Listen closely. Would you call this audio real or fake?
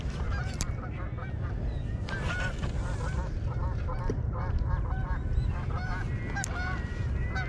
real